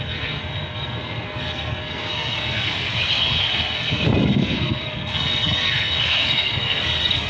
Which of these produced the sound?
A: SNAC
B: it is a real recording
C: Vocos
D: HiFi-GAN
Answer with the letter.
A